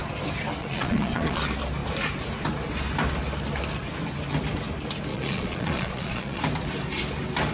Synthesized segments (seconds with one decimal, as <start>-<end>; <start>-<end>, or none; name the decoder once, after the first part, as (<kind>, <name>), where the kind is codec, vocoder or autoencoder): 0.6-1.4 (vocoder, Vocos); 5.1-6.4